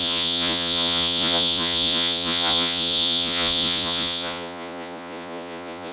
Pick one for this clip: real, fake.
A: fake